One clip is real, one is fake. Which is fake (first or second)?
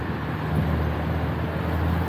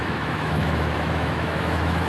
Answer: second